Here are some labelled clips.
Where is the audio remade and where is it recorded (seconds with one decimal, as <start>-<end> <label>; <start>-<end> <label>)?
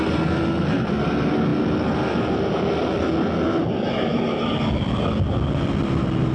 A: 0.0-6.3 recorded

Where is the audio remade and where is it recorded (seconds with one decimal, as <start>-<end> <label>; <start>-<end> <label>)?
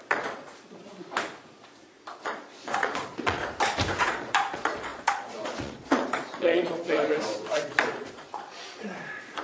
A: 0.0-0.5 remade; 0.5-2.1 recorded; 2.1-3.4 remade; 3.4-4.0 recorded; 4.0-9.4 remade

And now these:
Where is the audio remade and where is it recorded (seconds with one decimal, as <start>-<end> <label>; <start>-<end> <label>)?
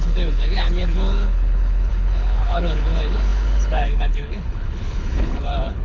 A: 0.0-5.8 remade